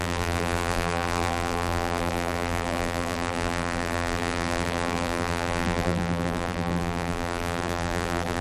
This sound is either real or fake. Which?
fake